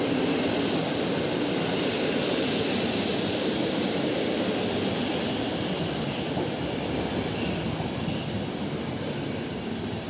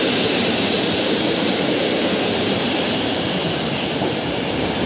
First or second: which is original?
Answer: first